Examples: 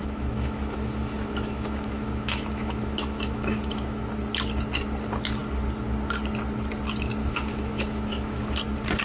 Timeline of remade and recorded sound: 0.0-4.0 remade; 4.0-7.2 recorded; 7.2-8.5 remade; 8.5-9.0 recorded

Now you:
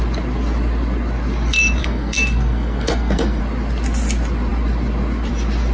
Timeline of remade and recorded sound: 0.0-1.8 recorded; 1.8-3.4 remade; 3.4-5.7 recorded

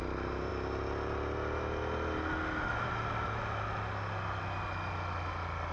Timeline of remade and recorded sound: 0.0-5.7 recorded